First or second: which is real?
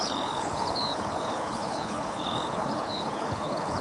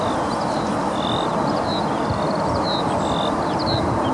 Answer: second